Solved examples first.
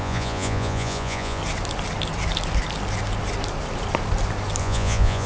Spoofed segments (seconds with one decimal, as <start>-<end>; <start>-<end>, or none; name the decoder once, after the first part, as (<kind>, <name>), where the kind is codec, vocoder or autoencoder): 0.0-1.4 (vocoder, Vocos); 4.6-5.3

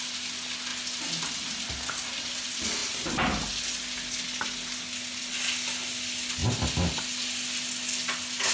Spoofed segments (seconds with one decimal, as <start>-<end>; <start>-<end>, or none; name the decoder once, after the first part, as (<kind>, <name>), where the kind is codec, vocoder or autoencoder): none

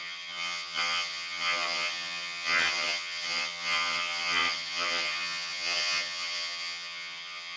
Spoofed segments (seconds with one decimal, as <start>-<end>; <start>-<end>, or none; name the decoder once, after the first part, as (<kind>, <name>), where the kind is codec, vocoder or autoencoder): 0.0-7.6 (vocoder, HiFi-GAN)